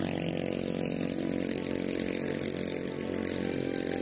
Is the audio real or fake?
real